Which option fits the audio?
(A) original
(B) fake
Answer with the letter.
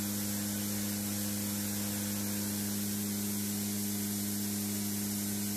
A